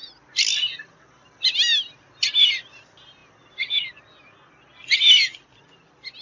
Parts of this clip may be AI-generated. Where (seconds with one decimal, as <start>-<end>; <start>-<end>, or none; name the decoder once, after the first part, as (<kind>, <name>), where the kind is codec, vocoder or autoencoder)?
none